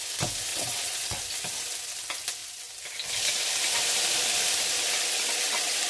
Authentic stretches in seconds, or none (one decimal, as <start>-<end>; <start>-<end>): 0.0-0.5; 1.2-5.9